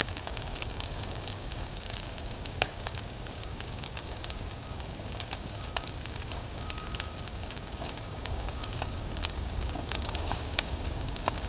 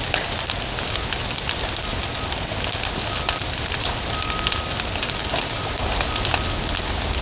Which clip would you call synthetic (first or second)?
first